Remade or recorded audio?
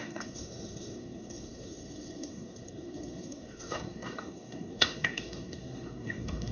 remade